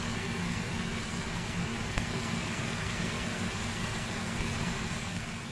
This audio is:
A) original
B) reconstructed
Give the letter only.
B